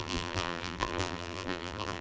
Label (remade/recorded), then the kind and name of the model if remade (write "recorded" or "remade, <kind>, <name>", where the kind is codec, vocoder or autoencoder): remade, vocoder, BigVGAN v2